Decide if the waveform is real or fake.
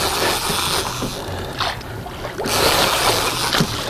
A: real